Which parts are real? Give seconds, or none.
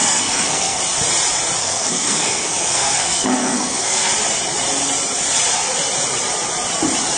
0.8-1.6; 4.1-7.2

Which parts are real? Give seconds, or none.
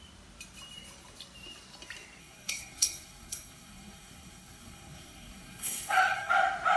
0.0-2.2; 6.3-6.8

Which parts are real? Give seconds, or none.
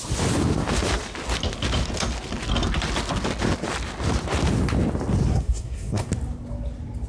0.0-5.3; 6.1-7.1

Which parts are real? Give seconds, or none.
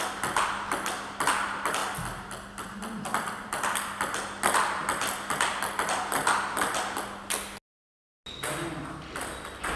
0.0-9.8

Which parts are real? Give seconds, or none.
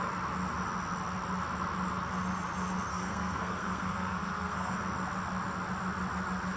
0.0-2.9; 4.7-6.6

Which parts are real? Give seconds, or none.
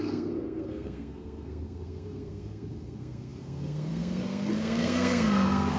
none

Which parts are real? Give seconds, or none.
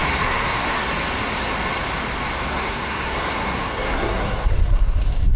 0.9-2.5